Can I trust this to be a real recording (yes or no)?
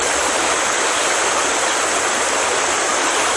yes